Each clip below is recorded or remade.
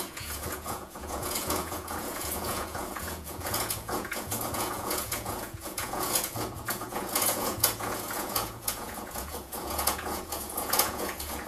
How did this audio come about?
remade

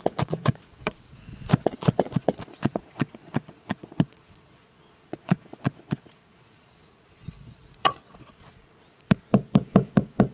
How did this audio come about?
remade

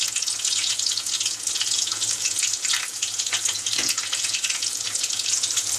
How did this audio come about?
remade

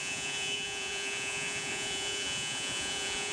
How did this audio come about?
remade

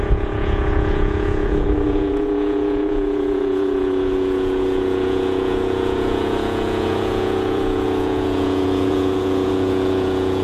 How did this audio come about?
remade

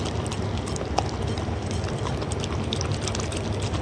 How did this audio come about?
recorded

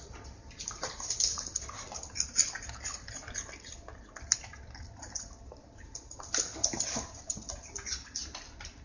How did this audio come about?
recorded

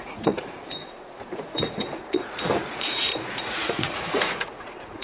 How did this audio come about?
remade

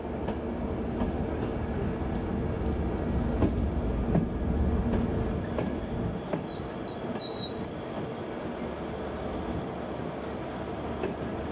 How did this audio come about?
recorded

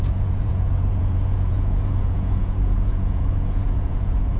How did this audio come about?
remade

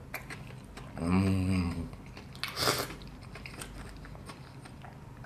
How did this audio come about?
recorded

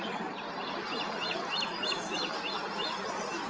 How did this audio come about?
recorded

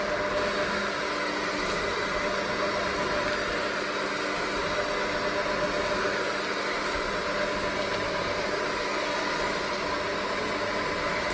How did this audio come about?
recorded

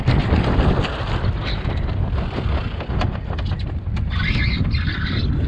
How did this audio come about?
recorded